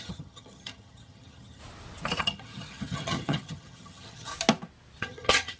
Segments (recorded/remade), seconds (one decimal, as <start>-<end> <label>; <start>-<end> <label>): 0.0-1.6 remade; 1.6-2.2 recorded; 2.2-4.3 remade; 4.3-5.0 recorded; 5.0-5.6 remade